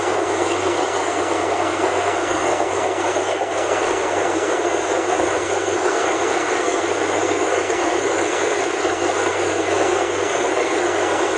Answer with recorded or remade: remade